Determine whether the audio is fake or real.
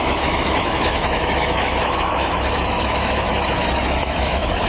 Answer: fake